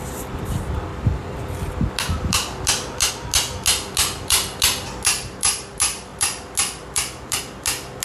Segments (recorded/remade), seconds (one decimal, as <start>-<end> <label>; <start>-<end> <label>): 0.0-8.0 recorded